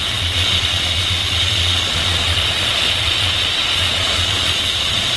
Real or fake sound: fake